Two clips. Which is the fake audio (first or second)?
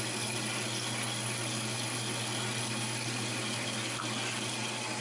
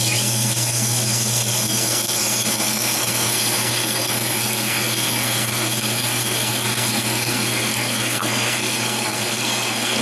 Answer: second